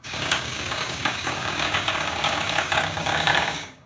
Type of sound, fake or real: fake